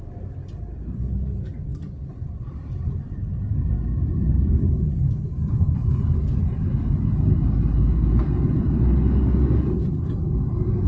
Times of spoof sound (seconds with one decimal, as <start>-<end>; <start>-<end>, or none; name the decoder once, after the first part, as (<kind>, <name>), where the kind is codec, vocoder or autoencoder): 1.7-2.9 (vocoder, BigVGAN v2); 6.2-6.7